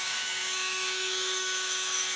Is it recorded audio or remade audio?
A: remade